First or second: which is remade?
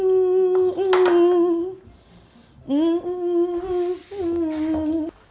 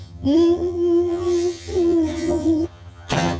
second